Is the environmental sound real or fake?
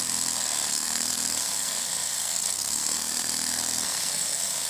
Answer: fake